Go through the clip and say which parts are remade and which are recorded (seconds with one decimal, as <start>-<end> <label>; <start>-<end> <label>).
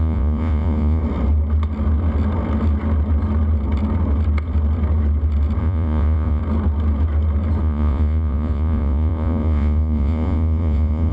0.0-1.0 remade; 1.0-5.6 recorded; 5.6-6.4 remade; 6.4-7.6 recorded; 7.6-11.1 remade